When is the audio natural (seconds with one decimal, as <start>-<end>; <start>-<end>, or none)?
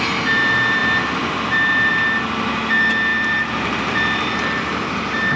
0.0-5.4